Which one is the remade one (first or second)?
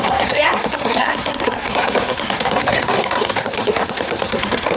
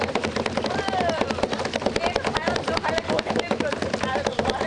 first